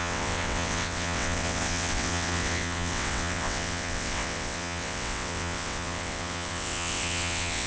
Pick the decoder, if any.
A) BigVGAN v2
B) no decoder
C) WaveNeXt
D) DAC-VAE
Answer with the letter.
C